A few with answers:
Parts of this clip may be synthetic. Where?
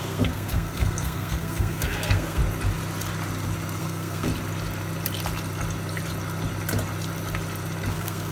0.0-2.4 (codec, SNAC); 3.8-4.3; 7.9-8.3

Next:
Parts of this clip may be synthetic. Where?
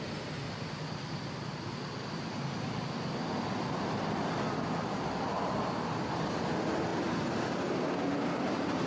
none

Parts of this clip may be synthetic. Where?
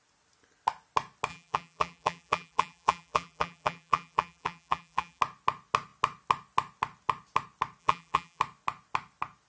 1.3-5.2 (vocoder, BigVGAN v2); 7.8-8.4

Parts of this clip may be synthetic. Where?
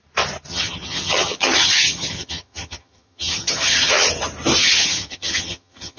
0.5-4.1 (vocoder, HiFi-GAN); 4.6-6.0